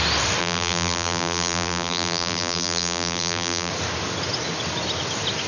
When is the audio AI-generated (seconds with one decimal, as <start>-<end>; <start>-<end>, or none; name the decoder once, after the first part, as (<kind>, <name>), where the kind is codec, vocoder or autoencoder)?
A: 0.4-3.7 (vocoder, BigVGAN v2)